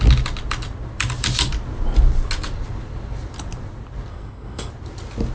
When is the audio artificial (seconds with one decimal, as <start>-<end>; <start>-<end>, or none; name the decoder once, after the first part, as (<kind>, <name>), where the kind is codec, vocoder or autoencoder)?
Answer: 4.1-4.7 (codec, SNAC)